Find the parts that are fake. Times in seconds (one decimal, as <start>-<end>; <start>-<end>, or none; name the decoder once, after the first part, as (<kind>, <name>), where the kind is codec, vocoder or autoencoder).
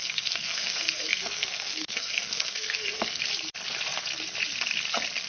0.0-3.2 (codec, SNAC)